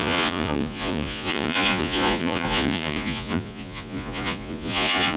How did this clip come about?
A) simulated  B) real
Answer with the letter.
A